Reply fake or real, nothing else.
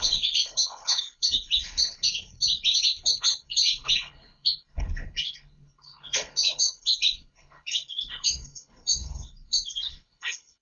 fake